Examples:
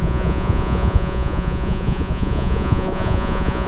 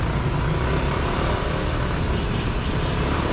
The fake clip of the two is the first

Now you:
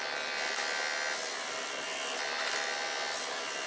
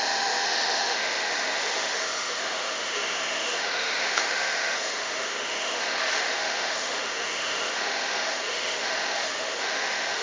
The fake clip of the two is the second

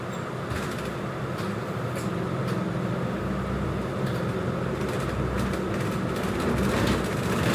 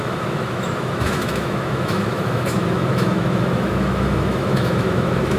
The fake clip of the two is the second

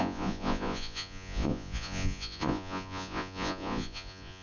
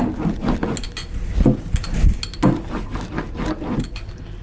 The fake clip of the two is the first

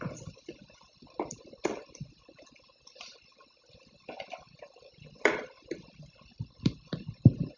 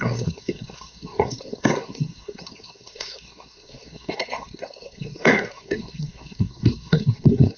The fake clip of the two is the second